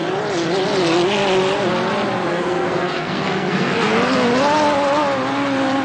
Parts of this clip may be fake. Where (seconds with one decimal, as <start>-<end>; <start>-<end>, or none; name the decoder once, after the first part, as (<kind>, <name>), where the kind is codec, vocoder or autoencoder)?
2.3-3.9 (codec, SNAC)